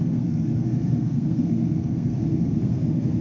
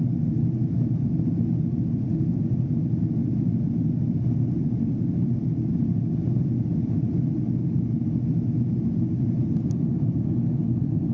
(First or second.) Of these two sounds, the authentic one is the second